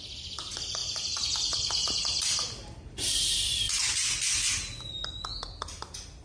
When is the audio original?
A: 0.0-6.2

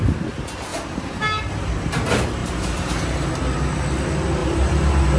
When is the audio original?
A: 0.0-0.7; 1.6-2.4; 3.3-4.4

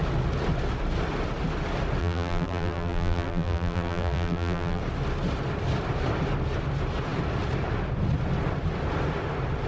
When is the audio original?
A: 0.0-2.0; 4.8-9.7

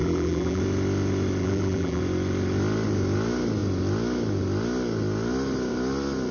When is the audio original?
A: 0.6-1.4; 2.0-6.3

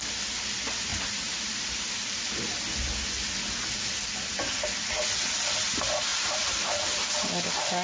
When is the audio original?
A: 0.0-0.9; 1.9-6.1; 6.8-7.8

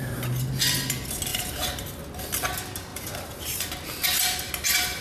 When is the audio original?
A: 0.0-2.9; 3.7-5.0